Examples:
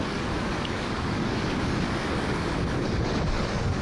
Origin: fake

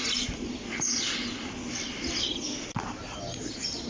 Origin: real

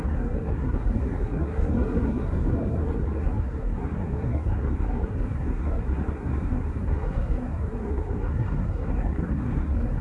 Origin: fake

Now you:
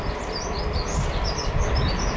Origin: real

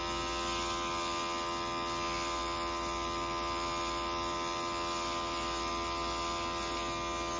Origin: real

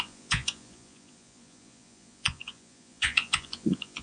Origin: fake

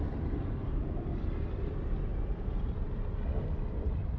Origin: real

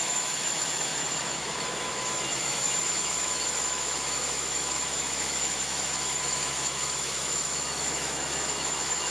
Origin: fake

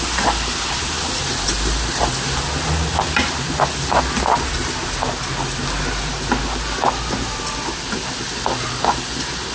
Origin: real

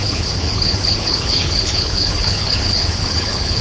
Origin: fake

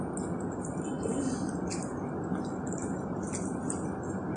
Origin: real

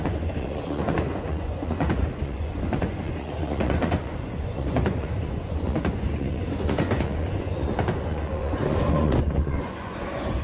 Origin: fake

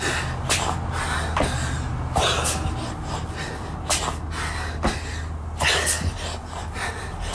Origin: real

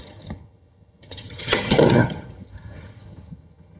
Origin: fake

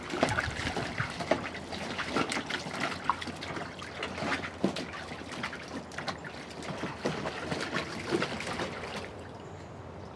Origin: real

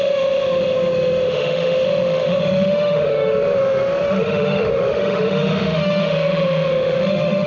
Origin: fake